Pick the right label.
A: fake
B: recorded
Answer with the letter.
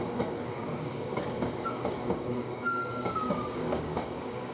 A